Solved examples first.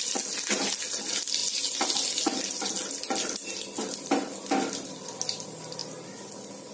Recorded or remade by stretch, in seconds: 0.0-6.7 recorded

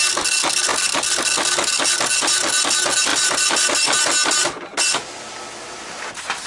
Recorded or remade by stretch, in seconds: 0.0-6.5 recorded

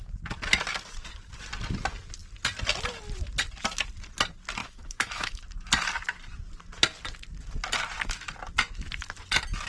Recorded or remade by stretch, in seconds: 0.0-4.6 recorded; 4.6-5.4 remade; 5.4-9.7 recorded